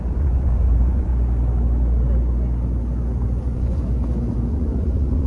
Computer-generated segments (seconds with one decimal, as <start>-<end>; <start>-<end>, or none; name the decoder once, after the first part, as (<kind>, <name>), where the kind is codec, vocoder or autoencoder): 0.0-1.1 (vocoder, Vocos); 3.4-3.8; 4.5-5.3